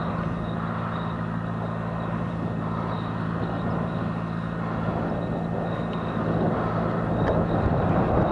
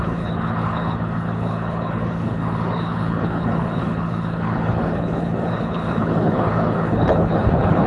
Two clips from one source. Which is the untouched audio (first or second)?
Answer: first